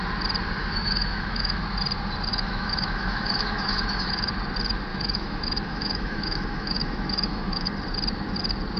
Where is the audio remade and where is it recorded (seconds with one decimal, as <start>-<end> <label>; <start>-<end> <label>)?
0.0-0.6 recorded; 0.6-1.6 remade; 1.6-2.3 recorded; 2.3-4.3 remade; 4.3-4.9 recorded; 4.9-7.7 remade; 7.7-8.8 recorded